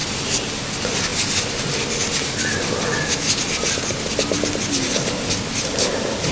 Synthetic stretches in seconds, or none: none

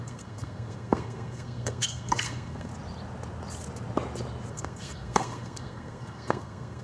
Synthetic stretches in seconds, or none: 0.0-2.7 (codec, SNAC); 4.5-6.8

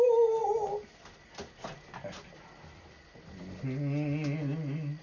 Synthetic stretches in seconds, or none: none

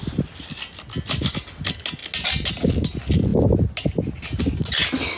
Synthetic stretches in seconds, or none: none

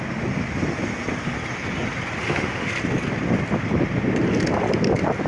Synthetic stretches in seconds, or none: 2.2-2.7 (autoencoder, DAC-VAE)